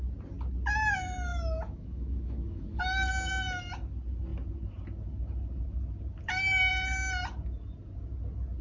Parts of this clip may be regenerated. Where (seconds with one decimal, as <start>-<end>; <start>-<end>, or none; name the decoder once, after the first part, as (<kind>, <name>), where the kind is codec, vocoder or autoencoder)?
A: 1.3-2.8 (autoencoder, DAC-VAE)

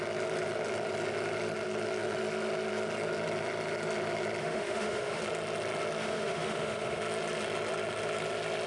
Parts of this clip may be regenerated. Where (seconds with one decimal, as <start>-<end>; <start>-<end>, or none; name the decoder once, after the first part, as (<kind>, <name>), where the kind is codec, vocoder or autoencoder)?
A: 4.4-5.2 (autoencoder, DAC-VAE); 6.0-7.0